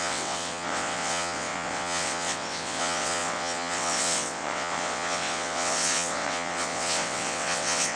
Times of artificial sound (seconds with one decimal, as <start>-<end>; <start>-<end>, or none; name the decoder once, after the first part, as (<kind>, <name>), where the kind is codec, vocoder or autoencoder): 0.0-8.0 (vocoder, WaveNeXt)